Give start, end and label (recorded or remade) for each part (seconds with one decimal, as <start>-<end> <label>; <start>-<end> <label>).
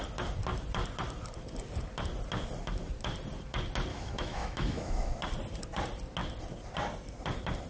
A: 0.0-3.9 recorded; 3.9-5.1 remade; 5.1-7.7 recorded